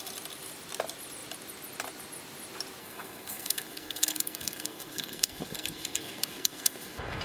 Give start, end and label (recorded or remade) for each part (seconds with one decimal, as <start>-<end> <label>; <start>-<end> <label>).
0.0-2.8 recorded; 2.8-7.2 remade